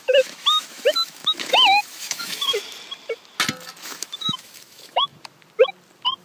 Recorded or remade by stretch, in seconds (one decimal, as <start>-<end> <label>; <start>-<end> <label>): 0.0-2.5 remade; 2.5-3.8 recorded; 3.8-5.1 remade; 5.1-6.2 recorded